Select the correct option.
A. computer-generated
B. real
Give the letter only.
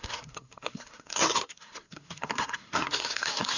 A